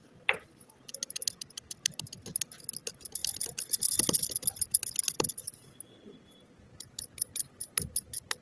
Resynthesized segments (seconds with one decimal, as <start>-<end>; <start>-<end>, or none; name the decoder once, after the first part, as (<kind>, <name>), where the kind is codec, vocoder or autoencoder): none

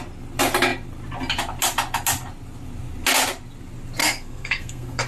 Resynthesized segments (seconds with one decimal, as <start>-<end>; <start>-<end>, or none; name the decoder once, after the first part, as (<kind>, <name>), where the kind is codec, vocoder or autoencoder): 4.0-5.1 (codec, SNAC)